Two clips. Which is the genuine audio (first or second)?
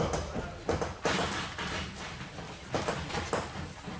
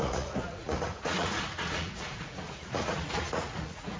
first